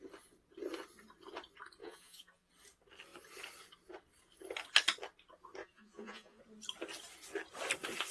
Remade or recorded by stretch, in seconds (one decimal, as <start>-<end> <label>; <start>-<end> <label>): 0.0-1.8 recorded; 1.8-2.5 remade; 2.5-5.6 recorded; 5.6-6.4 remade; 6.4-8.1 recorded